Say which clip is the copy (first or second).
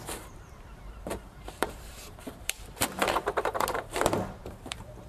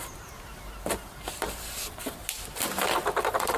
first